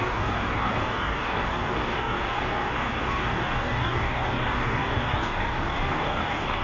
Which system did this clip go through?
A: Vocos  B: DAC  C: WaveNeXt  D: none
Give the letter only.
B